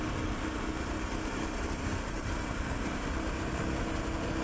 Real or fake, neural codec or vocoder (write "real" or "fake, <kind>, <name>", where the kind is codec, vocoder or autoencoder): real